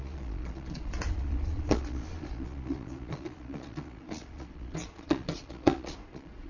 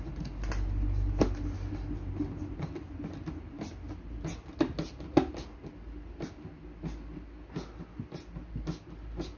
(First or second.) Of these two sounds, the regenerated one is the first